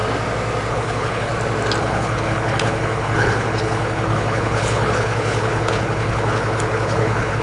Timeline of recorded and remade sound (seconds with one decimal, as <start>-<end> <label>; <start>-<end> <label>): 0.0-0.7 recorded; 0.7-1.3 remade; 1.3-1.8 recorded; 1.8-7.4 remade